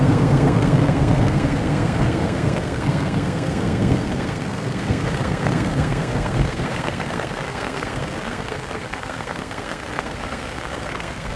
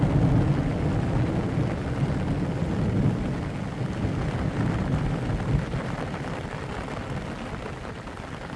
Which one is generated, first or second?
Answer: first